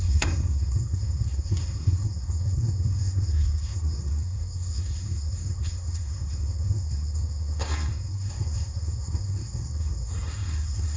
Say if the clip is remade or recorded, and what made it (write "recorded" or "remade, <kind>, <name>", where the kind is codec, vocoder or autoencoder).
remade, codec, SNAC